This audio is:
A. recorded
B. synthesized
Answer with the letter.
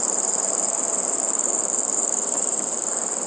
B